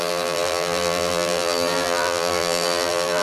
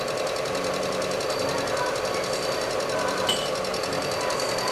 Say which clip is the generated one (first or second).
first